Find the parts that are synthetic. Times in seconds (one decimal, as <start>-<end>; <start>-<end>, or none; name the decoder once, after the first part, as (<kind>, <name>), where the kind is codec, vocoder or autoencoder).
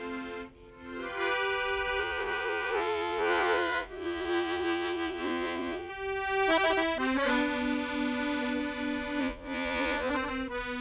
2.0-5.9 (vocoder, Vocos); 9.2-10.1